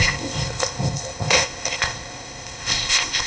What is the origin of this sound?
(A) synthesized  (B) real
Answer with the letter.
A